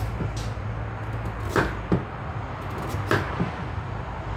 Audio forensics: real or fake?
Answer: real